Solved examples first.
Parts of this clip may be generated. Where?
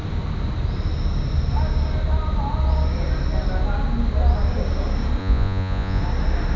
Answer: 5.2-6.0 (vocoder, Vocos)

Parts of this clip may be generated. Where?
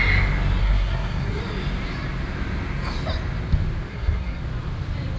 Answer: 0.6-1.4 (codec, SNAC); 3.9-4.4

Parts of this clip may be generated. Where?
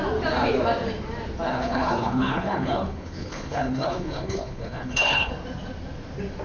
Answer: 1.5-5.3 (codec, HILCodec)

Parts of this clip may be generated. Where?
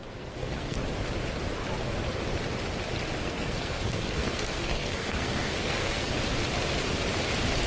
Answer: 0.0-0.8 (codec, SNAC); 3.2-6.2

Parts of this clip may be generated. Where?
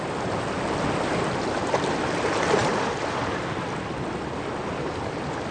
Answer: none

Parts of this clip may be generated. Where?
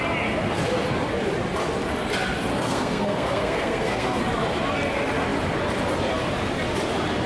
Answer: 2.5-4.2 (codec, SNAC)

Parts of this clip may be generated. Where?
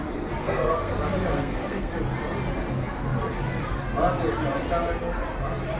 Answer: 0.4-0.9 (codec, SNAC); 1.3-1.9